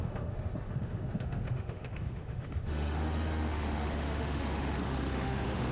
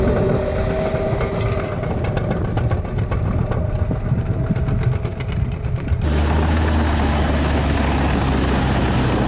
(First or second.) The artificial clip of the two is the first